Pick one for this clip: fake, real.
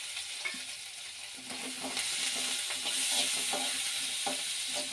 real